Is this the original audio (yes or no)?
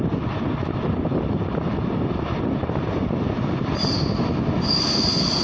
yes